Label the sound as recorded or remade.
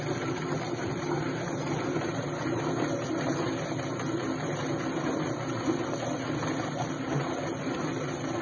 recorded